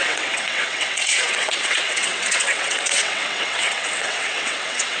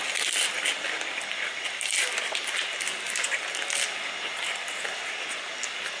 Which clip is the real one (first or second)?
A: second